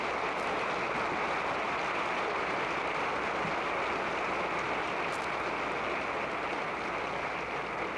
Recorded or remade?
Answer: recorded